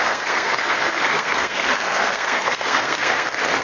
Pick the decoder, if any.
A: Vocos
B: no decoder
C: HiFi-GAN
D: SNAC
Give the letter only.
D